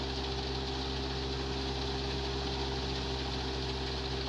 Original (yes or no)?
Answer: yes